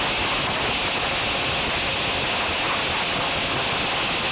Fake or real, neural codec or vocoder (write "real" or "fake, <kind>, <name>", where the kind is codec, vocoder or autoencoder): real